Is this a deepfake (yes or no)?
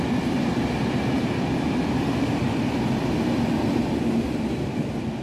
no